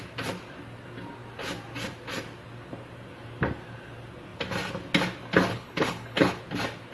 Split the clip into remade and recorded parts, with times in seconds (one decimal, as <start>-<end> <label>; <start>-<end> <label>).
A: 0.0-5.5 recorded; 5.5-6.4 remade; 6.4-6.9 recorded